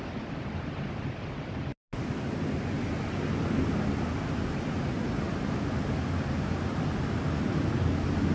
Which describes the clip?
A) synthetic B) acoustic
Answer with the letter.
B